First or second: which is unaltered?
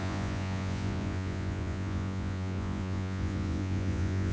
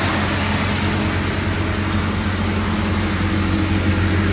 second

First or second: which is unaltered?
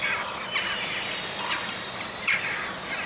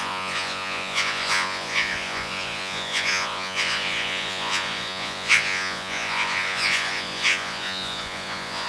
first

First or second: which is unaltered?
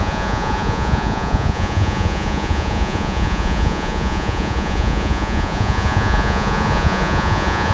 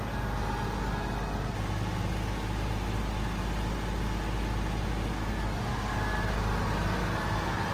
second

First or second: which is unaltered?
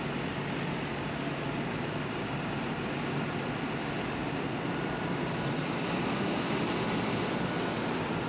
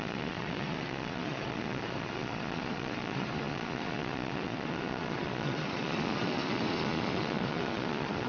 first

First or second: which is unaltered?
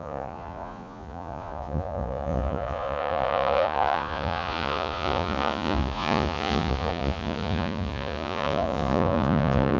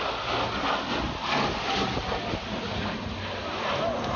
second